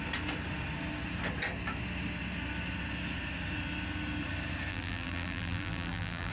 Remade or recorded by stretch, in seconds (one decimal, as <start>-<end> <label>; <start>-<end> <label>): 0.0-4.7 recorded; 4.7-6.3 remade